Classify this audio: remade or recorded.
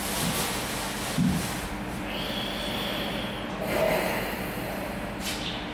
recorded